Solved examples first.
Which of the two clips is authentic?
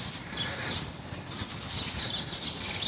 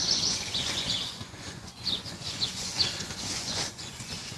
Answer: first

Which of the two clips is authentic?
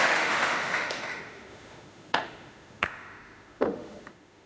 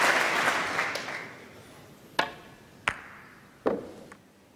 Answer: second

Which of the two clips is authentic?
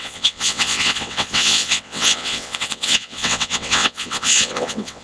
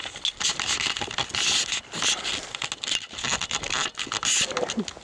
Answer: second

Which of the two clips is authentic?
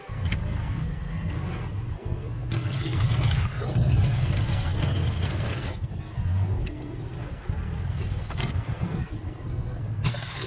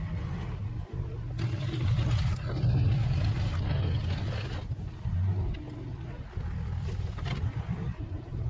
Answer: second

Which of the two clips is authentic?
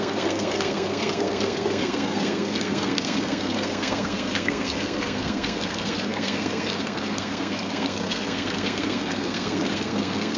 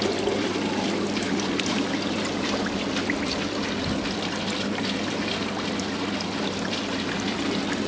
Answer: second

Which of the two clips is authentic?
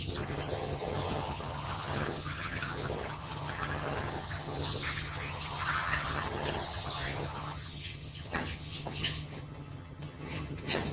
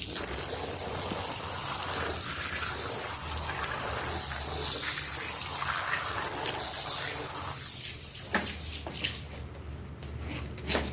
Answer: second